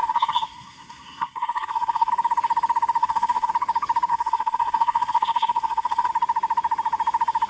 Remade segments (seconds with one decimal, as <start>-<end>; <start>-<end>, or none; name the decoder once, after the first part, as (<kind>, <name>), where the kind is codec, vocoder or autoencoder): 0.0-2.1 (codec, SNAC); 3.0-3.5; 4.1-6.1